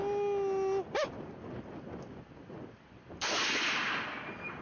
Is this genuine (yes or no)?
yes